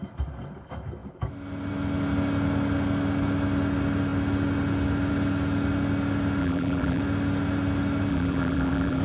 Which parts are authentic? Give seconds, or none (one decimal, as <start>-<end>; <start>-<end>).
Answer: 0.0-6.4; 7.0-8.1